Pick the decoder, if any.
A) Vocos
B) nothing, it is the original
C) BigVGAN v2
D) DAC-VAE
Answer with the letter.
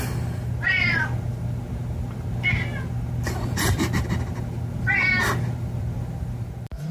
B